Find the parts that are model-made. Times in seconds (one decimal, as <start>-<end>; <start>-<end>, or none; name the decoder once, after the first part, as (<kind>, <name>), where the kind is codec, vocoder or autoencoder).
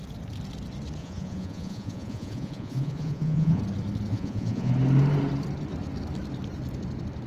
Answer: 1.0-3.6 (vocoder, Vocos); 4.1-4.7